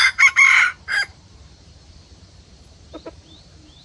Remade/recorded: remade